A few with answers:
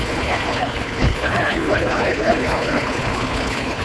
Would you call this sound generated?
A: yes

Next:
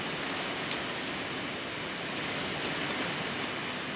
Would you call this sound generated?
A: no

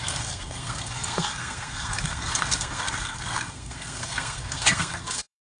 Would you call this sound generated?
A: yes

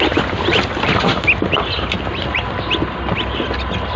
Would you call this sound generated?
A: no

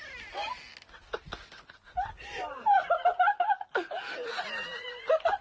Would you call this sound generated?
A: no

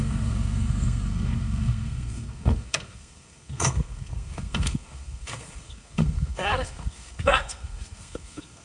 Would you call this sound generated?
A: yes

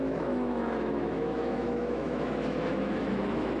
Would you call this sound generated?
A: yes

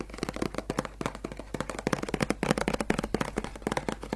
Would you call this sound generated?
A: no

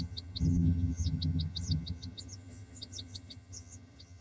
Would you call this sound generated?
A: yes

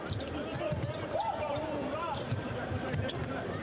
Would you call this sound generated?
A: yes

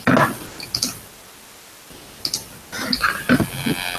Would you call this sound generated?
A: no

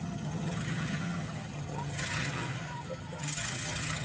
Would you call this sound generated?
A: yes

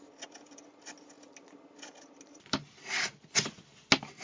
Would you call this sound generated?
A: no